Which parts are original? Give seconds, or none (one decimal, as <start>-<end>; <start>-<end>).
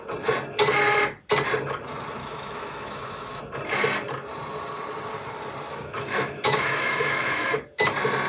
0.0-2.2; 3.4-5.7; 7.5-8.3